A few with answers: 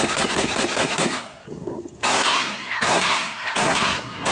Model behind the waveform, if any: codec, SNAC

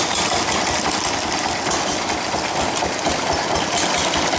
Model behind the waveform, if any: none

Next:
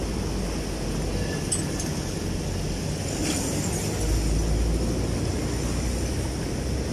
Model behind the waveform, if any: none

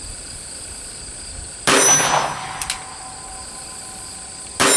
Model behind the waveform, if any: none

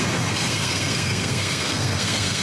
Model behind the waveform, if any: codec, SNAC